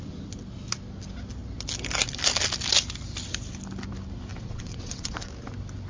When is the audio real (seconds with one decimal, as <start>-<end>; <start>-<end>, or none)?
0.0-4.3; 5.3-5.9